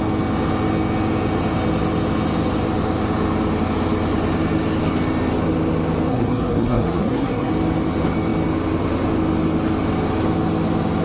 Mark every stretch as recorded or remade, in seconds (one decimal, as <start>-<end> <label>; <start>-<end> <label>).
0.0-6.1 recorded; 6.1-7.5 remade; 7.5-11.0 recorded